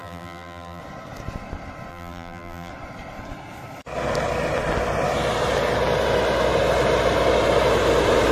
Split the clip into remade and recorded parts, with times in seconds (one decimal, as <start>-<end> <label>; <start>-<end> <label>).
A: 0.0-0.8 remade; 0.8-1.9 recorded; 1.9-2.7 remade; 2.7-8.3 recorded